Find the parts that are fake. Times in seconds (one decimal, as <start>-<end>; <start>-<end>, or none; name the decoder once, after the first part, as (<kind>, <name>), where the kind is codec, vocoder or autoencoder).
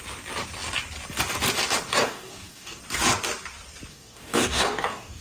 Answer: 1.9-2.8 (codec, DAC); 3.9-5.2